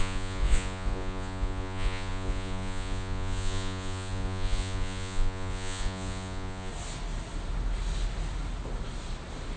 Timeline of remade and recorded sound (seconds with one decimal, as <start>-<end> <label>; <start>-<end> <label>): 0.0-6.7 remade; 6.7-9.6 recorded